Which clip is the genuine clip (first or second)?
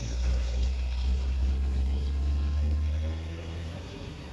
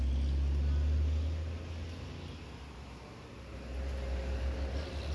second